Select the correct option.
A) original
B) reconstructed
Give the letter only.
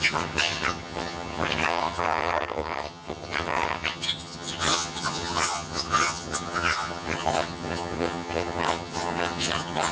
B